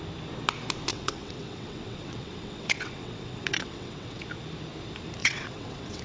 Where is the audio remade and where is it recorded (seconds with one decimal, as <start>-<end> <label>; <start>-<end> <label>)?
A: 0.0-0.9 recorded; 0.9-4.2 remade; 4.2-5.2 recorded; 5.2-6.0 remade